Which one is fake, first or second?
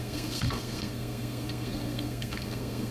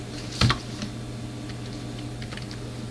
first